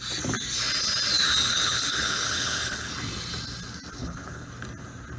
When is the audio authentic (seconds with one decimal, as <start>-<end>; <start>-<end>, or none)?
0.0-1.5; 2.9-4.0; 4.5-5.2